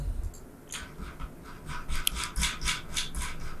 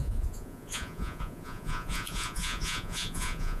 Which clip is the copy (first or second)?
second